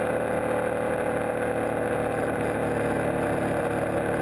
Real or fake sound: real